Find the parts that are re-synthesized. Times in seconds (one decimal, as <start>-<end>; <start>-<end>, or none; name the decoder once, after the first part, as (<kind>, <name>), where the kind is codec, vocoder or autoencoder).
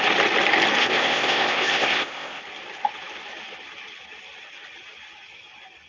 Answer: 0.8-2.4 (codec, ZipCodec)